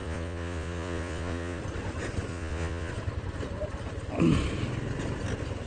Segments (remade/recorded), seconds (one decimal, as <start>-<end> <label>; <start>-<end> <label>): 0.0-1.6 remade; 1.6-2.3 recorded; 2.3-2.9 remade; 2.9-5.7 recorded